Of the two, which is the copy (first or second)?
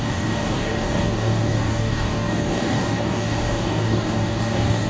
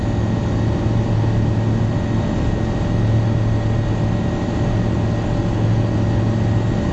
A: first